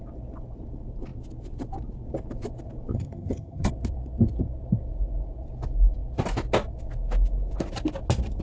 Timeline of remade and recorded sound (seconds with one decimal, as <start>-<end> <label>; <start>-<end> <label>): 0.0-2.9 recorded; 2.9-3.7 remade; 3.7-8.4 recorded